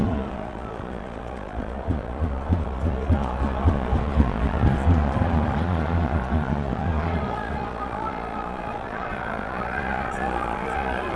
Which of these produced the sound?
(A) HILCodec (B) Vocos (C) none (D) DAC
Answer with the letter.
B